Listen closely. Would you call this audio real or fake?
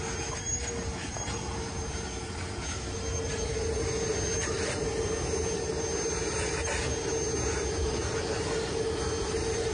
real